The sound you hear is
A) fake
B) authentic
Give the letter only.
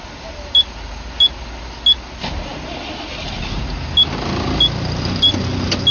B